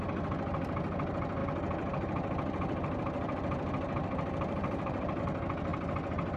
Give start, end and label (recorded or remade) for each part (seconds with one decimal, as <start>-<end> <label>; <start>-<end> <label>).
0.0-1.4 recorded; 1.4-5.2 remade; 5.2-6.4 recorded